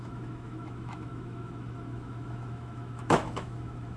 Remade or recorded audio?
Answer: remade